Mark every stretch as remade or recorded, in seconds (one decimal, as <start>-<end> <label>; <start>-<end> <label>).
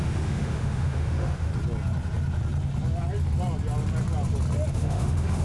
0.0-1.5 remade; 1.5-4.7 recorded; 4.7-5.4 remade